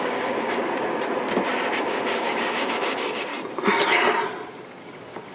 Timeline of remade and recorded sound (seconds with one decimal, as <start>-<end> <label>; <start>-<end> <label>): 0.0-0.6 remade; 0.6-1.7 recorded; 1.7-3.3 remade; 3.3-4.8 recorded; 4.8-5.3 remade